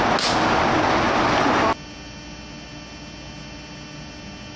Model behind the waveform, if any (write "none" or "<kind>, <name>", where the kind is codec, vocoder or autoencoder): none